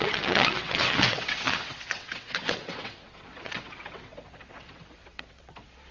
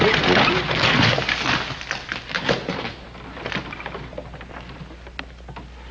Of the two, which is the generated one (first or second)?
first